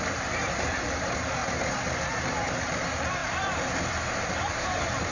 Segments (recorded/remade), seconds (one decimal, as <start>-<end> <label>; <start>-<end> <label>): 0.0-1.4 remade; 1.4-2.5 recorded; 2.5-5.1 remade

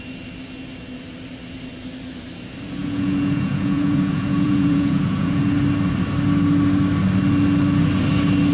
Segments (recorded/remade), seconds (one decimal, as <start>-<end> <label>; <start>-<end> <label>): 0.0-2.8 recorded; 2.8-5.4 remade; 5.4-8.5 recorded

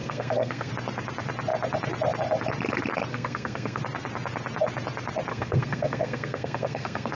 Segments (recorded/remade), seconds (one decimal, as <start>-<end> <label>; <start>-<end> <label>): 0.0-0.7 remade; 0.7-3.1 recorded; 3.1-3.8 remade; 3.8-5.3 recorded; 5.3-7.1 remade

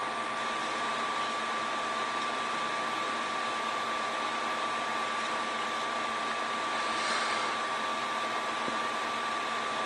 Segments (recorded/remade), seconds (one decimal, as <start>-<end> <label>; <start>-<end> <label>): 0.0-0.6 recorded; 0.6-1.2 remade; 1.2-7.9 recorded; 7.9-8.8 remade; 8.8-9.9 recorded

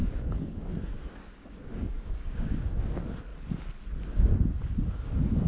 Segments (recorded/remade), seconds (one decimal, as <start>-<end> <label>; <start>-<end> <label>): 0.0-2.8 remade; 2.8-5.5 recorded

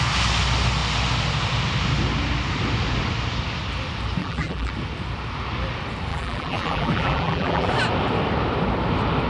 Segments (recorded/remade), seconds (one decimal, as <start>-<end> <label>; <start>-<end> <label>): 0.0-4.2 recorded; 4.2-4.7 remade; 4.7-6.1 recorded; 6.1-7.7 remade; 7.7-9.3 recorded

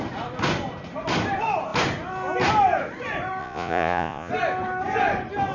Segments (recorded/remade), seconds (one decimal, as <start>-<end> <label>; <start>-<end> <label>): 0.0-3.4 recorded; 3.4-4.3 remade; 4.3-5.5 recorded

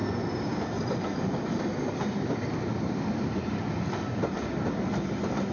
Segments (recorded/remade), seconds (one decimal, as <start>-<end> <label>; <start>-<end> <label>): 0.0-5.5 recorded